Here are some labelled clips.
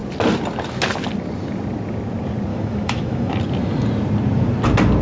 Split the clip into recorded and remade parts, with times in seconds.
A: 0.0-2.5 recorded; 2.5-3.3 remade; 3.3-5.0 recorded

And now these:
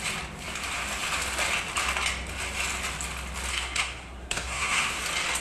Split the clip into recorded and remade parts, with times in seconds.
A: 0.0-3.5 recorded; 3.5-5.0 remade; 5.0-5.4 recorded